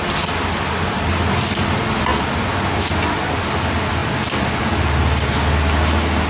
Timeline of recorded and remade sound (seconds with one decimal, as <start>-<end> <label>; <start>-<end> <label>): 0.0-6.3 recorded